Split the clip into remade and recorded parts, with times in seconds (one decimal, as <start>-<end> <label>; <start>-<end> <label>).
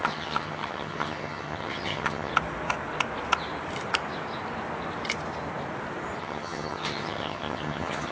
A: 0.0-2.3 remade; 2.3-6.2 recorded; 6.2-8.1 remade